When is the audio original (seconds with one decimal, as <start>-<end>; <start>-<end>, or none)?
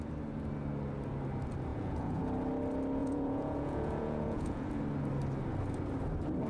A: 0.0-1.7; 2.2-3.0; 4.8-6.5